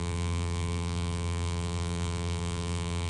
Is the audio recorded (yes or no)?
no